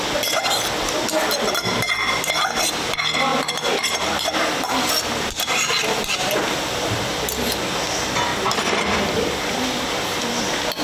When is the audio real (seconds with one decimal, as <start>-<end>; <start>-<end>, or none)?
0.0-3.3; 6.7-10.8